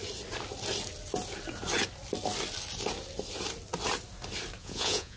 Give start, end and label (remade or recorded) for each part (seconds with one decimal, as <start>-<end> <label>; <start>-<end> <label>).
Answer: 0.0-4.6 recorded; 4.6-5.2 remade